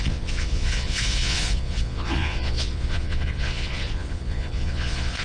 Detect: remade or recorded remade